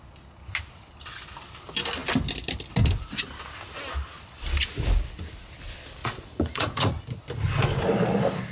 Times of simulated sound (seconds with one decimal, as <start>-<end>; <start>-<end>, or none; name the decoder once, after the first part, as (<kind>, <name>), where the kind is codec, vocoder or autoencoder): 6.0-7.0 (vocoder, Vocos)